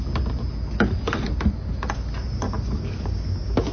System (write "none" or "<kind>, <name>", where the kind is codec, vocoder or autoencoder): none